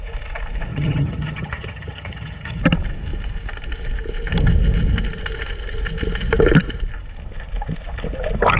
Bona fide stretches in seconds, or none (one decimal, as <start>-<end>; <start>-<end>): 0.0-0.7; 2.6-8.6